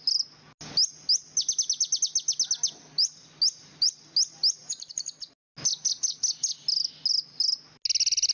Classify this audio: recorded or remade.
recorded